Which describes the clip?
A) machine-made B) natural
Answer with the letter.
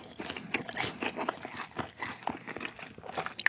B